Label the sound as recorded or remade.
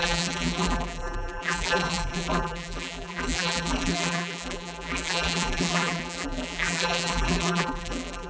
remade